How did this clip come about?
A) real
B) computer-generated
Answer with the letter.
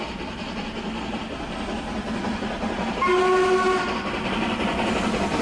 A